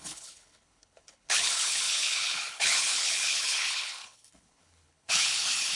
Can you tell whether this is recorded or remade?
remade